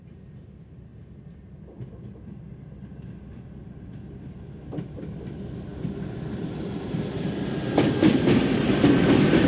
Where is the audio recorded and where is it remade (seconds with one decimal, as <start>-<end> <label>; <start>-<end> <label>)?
0.0-5.7 recorded; 5.7-7.4 remade; 7.4-9.5 recorded